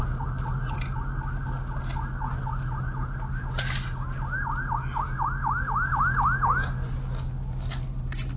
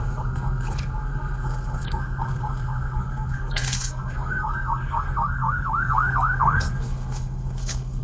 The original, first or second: first